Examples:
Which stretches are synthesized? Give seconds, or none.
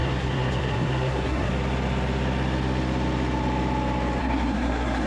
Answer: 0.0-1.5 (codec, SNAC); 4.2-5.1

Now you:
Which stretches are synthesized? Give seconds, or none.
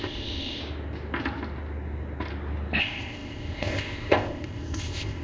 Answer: 0.0-0.6 (codec, ZipCodec); 2.8-5.2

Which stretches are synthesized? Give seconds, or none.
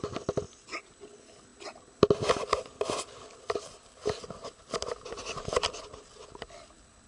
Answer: none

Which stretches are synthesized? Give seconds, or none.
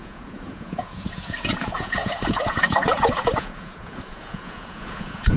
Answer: 0.0-5.4 (vocoder, Vocos)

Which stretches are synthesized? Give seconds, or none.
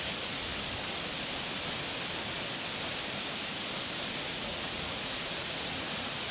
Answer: 0.0-0.5 (vocoder, Vocos); 4.3-6.3